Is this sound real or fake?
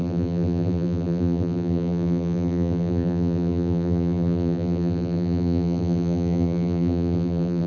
fake